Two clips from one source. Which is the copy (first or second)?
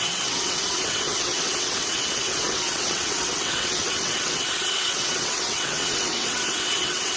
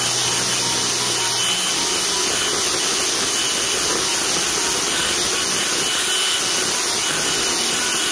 first